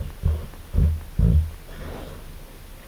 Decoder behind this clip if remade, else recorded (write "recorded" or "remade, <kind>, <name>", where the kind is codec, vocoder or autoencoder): recorded